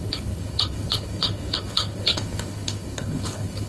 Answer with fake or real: fake